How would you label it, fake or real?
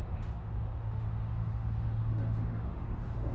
fake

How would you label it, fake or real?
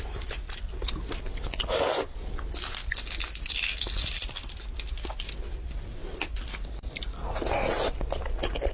real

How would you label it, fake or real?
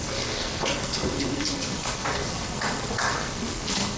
fake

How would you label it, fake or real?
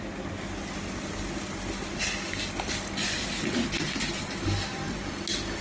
real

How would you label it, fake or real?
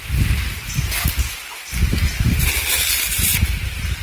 real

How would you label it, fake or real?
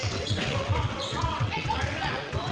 fake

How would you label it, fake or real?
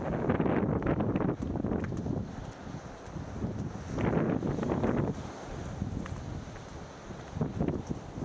real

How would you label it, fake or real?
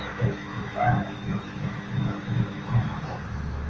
fake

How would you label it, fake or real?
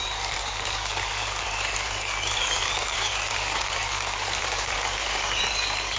fake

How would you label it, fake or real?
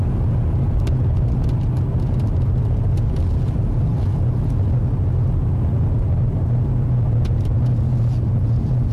real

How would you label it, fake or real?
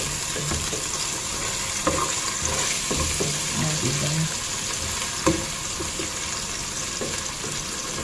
real